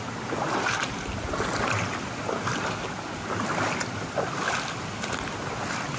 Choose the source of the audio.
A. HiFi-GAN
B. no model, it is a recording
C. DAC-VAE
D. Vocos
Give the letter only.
B